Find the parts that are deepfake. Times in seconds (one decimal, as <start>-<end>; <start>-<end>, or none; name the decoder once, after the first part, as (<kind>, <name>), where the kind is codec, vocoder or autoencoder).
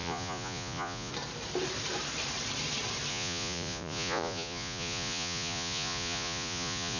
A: 0.0-1.1 (vocoder, Vocos); 3.1-7.0